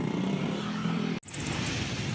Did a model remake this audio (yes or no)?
no